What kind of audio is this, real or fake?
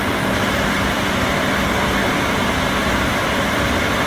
real